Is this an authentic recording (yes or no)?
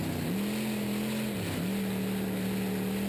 yes